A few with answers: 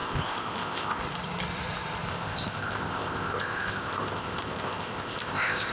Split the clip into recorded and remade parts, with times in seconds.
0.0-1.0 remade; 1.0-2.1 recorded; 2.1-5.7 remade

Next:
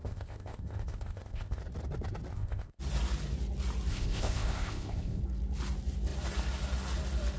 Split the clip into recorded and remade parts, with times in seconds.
0.0-1.6 remade; 1.6-2.3 recorded; 2.3-2.8 remade; 2.8-3.9 recorded; 3.9-5.2 remade; 5.2-7.4 recorded

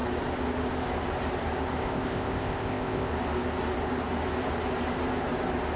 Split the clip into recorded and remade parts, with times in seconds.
0.0-1.8 recorded; 1.8-3.1 remade; 3.1-5.8 recorded

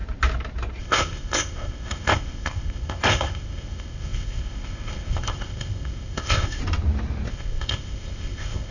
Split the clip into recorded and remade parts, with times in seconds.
0.0-0.8 recorded; 0.8-6.6 remade; 6.6-7.3 recorded; 7.3-8.7 remade

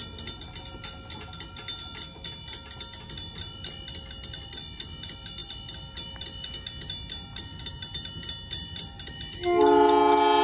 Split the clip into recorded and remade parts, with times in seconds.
0.0-10.4 recorded

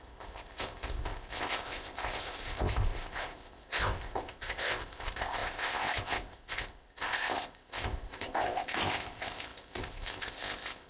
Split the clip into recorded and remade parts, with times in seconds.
0.0-10.9 remade

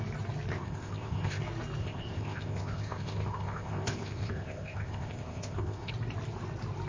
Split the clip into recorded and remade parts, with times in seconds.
0.0-0.5 recorded; 0.5-1.4 remade; 1.4-1.8 recorded; 1.8-5.9 remade; 5.9-6.9 recorded

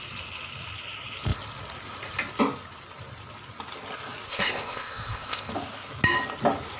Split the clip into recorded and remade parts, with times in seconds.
0.0-4.3 recorded; 4.3-5.5 remade; 5.5-6.8 recorded